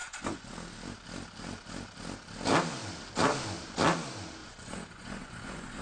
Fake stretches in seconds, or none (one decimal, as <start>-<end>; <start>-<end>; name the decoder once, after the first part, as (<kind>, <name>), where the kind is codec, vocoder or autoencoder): 0.0-0.5 (vocoder, Vocos); 4.4-5.8

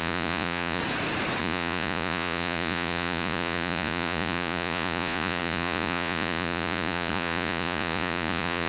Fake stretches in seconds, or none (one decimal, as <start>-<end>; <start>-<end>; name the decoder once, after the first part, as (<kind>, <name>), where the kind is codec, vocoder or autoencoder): 0.0-0.8 (vocoder, Vocos); 1.4-8.7

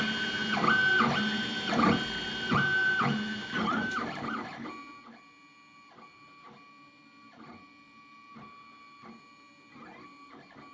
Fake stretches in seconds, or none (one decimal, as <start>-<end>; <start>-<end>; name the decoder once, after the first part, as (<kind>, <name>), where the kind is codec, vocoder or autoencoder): none